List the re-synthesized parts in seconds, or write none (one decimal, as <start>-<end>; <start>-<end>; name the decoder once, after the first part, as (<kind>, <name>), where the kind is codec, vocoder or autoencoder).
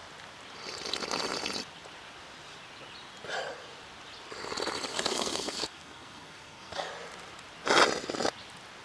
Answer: 4.9-6.9 (codec, SNAC)